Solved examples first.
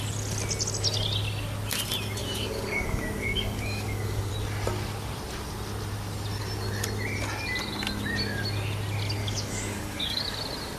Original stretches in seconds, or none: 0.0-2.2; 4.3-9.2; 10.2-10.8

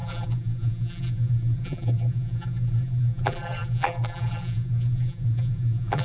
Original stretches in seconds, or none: none